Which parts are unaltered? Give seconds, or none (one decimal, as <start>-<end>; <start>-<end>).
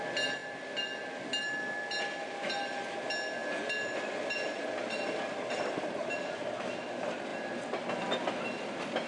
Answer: 0.0-9.1